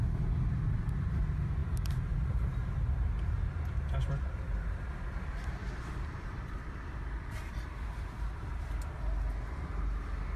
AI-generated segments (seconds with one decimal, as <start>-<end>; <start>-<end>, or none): 5.6-8.6